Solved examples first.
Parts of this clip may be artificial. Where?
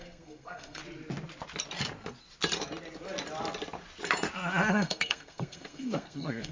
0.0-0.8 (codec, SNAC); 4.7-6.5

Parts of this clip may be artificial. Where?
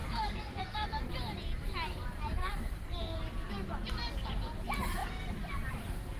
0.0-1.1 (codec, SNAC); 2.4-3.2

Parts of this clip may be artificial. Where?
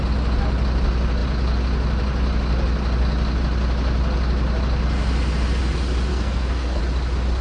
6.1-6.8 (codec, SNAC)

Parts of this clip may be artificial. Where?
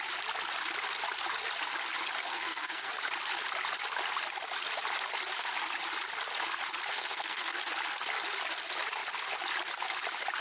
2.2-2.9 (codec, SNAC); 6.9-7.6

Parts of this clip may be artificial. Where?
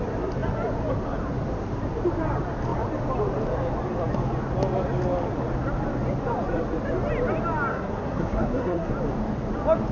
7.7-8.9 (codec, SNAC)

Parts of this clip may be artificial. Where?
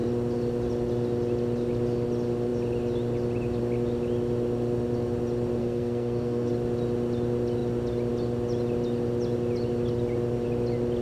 5.6-6.5 (codec, SNAC)